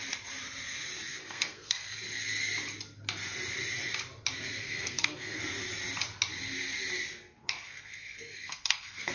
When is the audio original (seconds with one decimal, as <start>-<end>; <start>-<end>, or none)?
0.0-1.2; 1.9-4.6; 5.4-7.4